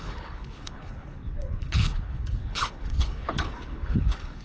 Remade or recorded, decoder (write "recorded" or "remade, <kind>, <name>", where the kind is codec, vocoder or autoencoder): remade, codec, HILCodec